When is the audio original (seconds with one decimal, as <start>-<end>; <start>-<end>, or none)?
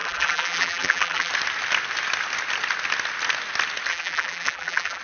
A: 1.3-3.9